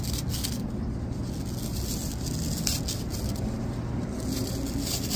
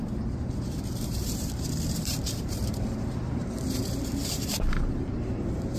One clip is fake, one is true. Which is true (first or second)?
first